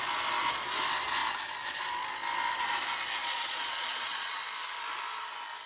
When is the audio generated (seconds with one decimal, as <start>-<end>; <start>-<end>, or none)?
3.2-4.4